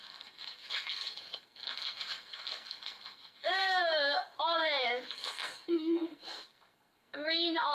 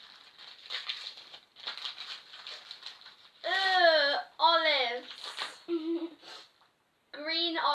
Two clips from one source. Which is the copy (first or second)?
first